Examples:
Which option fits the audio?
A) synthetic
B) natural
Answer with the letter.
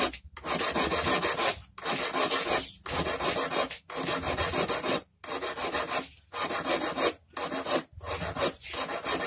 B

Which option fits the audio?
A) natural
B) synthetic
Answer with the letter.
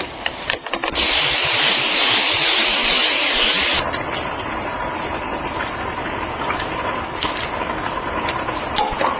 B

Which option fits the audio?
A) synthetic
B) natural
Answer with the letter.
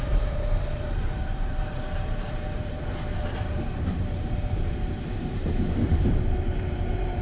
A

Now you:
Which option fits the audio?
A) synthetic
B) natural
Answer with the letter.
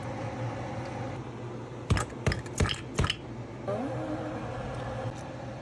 B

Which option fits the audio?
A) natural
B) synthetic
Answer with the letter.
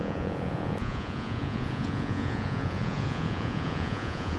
B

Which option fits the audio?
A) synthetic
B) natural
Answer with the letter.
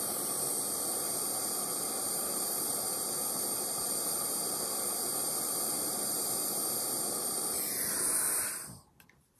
B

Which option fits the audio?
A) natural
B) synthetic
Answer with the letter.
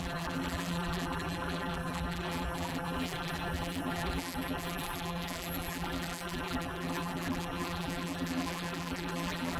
B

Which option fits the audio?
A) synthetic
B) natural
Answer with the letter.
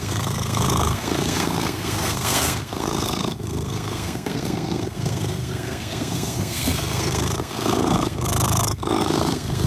A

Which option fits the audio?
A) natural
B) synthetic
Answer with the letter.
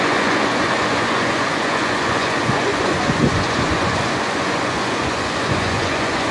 B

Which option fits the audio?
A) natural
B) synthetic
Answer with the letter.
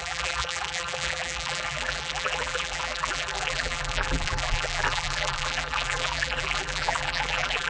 B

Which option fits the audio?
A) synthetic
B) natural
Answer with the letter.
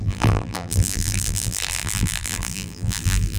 A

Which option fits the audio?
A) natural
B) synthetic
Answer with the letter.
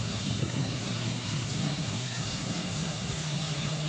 B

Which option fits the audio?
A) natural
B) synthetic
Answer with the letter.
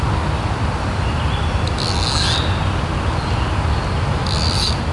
A